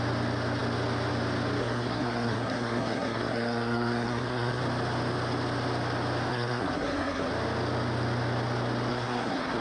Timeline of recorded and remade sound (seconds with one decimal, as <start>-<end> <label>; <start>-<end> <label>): 0.0-1.6 recorded; 1.6-4.6 remade; 4.6-6.3 recorded; 6.3-7.3 remade; 7.3-8.9 recorded; 8.9-9.6 remade